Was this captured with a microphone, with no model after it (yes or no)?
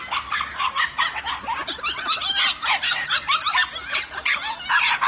yes